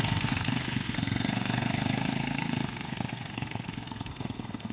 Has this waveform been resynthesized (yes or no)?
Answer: yes